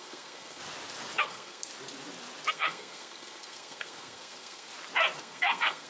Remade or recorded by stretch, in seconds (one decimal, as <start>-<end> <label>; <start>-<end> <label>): 0.0-0.6 remade; 0.6-1.2 recorded; 1.2-1.7 remade; 1.7-2.5 recorded; 2.5-4.7 remade; 4.7-5.2 recorded; 5.2-5.9 remade